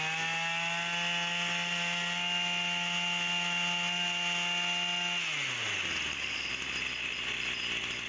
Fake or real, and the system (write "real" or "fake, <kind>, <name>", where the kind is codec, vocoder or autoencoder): real